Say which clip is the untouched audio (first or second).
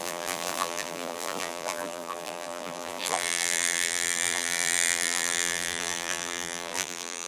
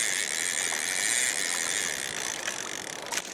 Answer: second